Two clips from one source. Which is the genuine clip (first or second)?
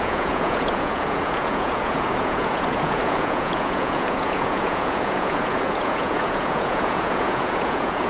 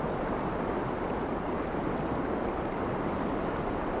second